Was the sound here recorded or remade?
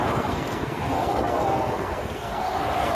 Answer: remade